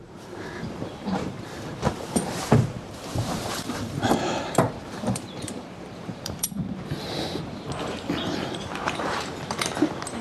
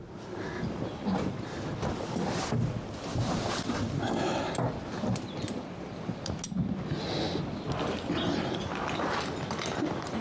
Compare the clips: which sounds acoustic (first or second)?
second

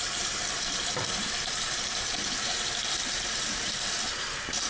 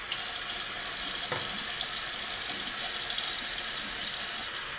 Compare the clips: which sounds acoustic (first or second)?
second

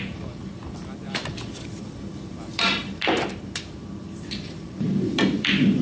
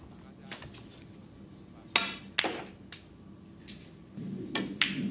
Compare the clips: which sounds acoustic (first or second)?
second